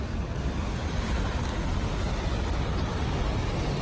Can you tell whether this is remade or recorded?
recorded